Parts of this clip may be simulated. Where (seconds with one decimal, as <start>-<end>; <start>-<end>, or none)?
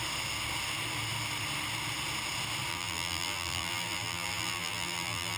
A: 2.7-5.4